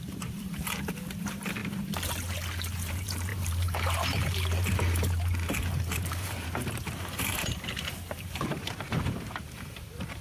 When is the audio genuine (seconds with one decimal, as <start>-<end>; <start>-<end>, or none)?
1.6-2.9